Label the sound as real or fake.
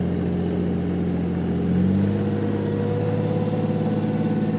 real